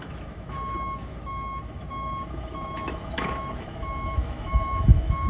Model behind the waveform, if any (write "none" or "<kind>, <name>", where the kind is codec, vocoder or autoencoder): autoencoder, DAC-VAE